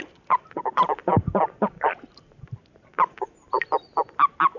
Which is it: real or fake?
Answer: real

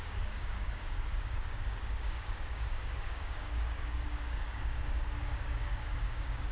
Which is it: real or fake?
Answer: fake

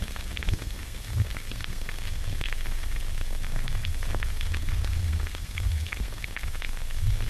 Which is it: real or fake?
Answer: fake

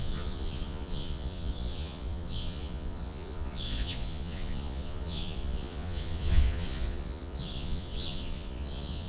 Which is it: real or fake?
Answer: fake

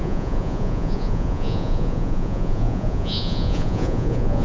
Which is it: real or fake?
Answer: fake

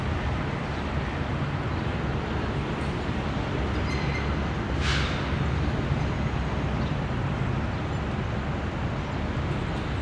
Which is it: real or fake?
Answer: real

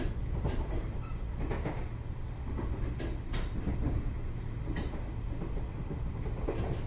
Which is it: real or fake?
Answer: real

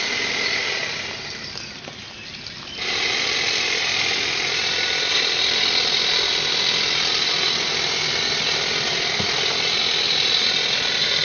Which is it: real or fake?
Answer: real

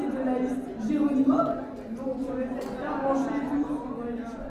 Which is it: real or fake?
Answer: real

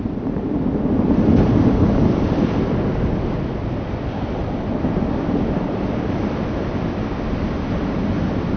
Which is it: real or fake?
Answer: real